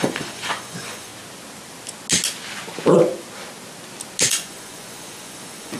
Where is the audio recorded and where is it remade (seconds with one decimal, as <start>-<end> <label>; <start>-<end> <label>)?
0.0-1.1 remade; 1.1-4.3 recorded; 4.3-5.8 remade